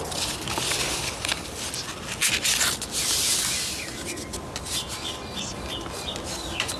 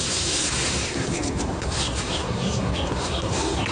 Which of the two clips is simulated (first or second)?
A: second